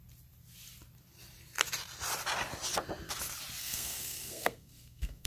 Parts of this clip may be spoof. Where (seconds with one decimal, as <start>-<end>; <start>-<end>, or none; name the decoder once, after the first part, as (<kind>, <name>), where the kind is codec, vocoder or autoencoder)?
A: 3.6-5.3 (codec, SNAC)